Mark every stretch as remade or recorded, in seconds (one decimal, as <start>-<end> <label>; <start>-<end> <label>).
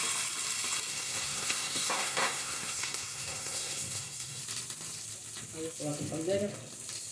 0.0-0.9 recorded; 0.9-4.4 remade; 4.4-7.1 recorded